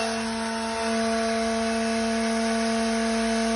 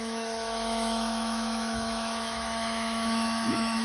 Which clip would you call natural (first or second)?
first